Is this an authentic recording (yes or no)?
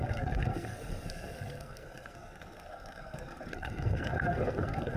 no